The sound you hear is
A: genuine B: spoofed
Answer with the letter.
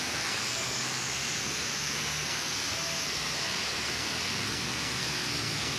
B